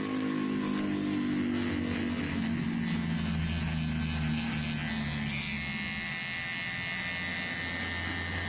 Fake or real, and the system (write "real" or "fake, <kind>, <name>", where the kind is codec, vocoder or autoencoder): real